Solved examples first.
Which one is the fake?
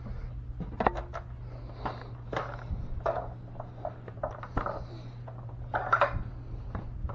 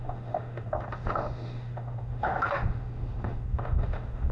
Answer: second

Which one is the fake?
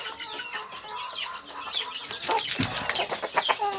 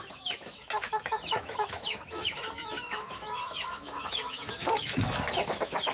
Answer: second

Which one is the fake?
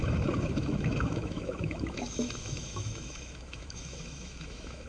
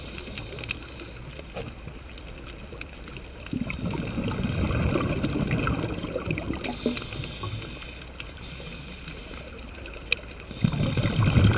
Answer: first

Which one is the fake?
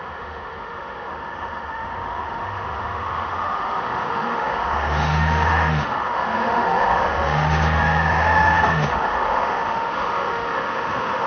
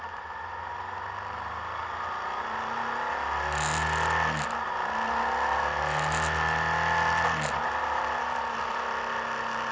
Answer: first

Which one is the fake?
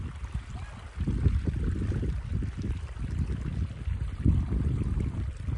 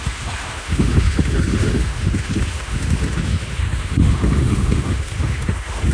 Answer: second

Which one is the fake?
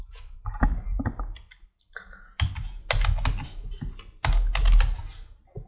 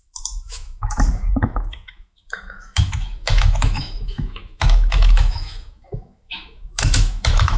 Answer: second